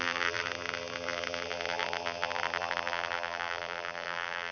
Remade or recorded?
remade